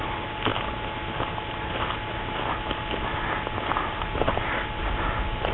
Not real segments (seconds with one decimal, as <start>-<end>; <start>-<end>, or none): none